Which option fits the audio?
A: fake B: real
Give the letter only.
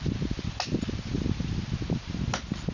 B